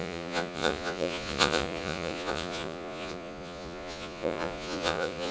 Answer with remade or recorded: remade